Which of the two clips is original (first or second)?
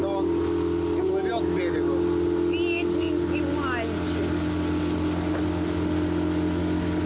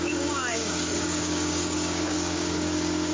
first